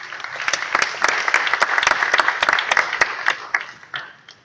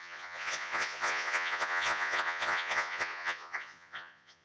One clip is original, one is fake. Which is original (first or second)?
first